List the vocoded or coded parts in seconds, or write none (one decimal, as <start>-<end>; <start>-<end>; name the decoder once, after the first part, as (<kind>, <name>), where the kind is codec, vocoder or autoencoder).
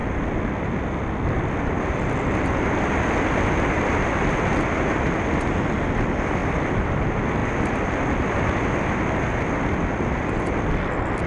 7.4-8.6 (vocoder, BigVGAN v2)